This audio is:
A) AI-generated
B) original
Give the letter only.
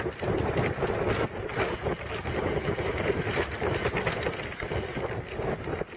B